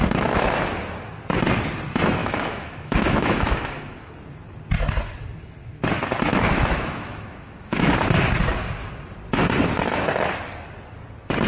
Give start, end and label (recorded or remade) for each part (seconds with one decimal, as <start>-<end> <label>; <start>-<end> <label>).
0.0-2.2 recorded; 2.2-4.1 remade; 4.1-6.3 recorded; 6.3-7.9 remade; 7.9-11.5 recorded